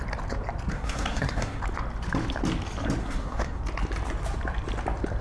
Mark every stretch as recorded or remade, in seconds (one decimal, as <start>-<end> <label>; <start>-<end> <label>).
0.0-0.7 recorded; 0.7-1.6 remade; 1.6-3.0 recorded; 3.0-3.6 remade; 3.6-5.2 recorded